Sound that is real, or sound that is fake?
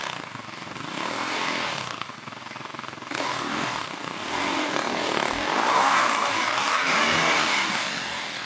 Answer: fake